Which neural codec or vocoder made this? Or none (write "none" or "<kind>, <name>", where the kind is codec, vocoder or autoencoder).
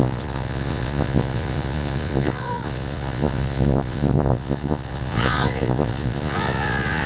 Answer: vocoder, Vocos